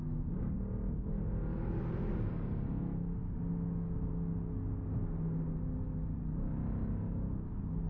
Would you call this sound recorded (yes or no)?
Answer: yes